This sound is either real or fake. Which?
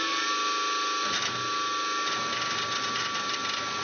real